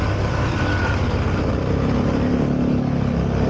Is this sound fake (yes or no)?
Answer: no